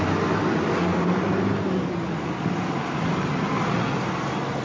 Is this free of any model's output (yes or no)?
yes